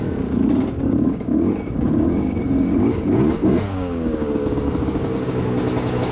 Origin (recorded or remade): remade